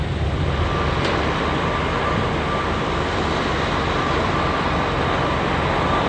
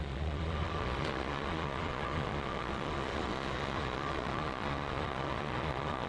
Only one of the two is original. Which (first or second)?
first